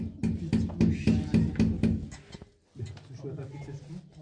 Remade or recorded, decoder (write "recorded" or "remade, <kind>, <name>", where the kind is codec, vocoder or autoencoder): recorded